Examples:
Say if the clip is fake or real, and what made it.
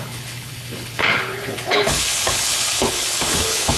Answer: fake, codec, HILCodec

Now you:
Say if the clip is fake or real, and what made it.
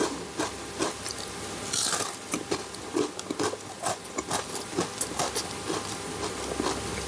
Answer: real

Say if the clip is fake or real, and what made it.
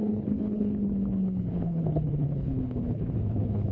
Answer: fake, codec, HILCodec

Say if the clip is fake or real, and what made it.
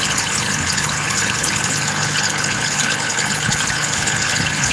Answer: fake, codec, HILCodec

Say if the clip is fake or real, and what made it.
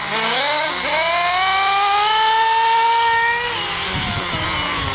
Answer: real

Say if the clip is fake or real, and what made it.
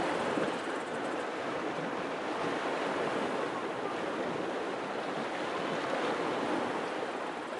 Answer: real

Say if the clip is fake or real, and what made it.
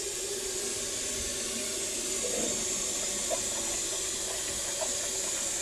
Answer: real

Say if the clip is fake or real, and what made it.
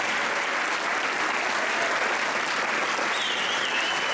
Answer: real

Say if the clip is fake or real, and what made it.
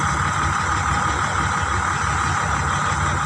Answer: real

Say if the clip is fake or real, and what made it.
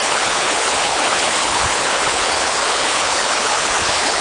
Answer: fake, codec, HILCodec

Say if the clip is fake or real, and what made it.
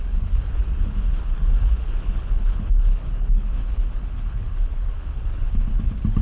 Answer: fake, codec, HILCodec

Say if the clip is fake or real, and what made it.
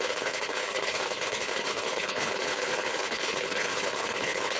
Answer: fake, codec, HILCodec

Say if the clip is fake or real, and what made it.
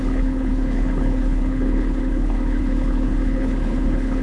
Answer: fake, codec, HILCodec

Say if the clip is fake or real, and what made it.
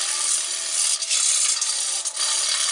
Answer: real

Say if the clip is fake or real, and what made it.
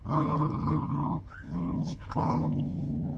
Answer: fake, codec, HILCodec